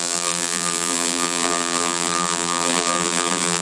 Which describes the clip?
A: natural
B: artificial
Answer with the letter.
B